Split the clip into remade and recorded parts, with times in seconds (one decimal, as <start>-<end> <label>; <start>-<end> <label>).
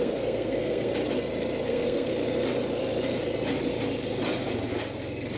0.0-0.9 remade; 0.9-1.7 recorded; 1.7-2.1 remade; 2.1-5.4 recorded